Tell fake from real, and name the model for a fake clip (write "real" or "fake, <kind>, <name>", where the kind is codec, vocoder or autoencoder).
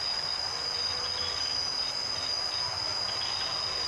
real